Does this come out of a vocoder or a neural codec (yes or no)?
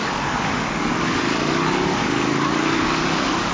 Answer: yes